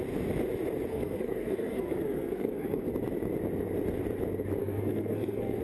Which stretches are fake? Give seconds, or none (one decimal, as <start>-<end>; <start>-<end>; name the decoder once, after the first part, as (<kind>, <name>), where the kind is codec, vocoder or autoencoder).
0.9-2.9 (codec, SNAC); 4.6-5.6